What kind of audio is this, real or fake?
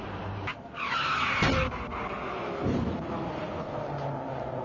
real